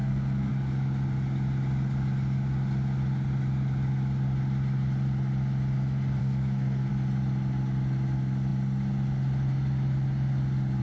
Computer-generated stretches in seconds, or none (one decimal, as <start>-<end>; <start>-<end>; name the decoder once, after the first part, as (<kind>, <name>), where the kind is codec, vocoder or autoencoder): 0.0-0.5 (codec, SNAC); 6.2-6.9